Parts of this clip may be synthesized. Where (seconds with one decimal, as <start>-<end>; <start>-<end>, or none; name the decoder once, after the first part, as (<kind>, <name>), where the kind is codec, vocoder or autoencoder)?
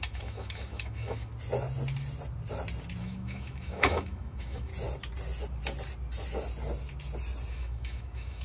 0.0-1.3 (autoencoder, DAC-VAE); 3.0-4.7; 7.5-8.4